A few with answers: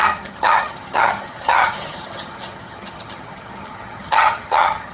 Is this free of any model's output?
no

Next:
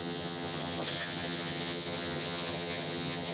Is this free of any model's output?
no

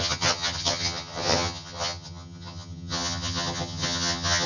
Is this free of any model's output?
no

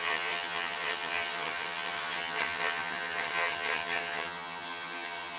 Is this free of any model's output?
no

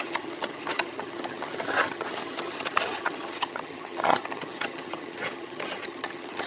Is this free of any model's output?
no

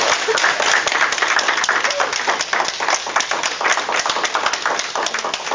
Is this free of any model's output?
yes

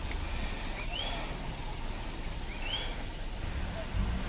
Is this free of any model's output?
yes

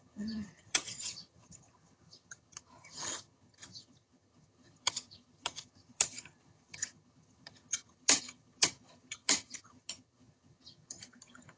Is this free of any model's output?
no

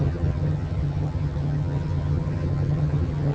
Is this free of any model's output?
no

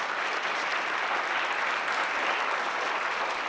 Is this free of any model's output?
yes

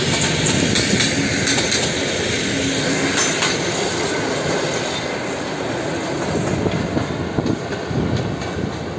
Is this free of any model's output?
yes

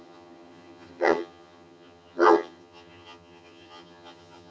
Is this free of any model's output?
no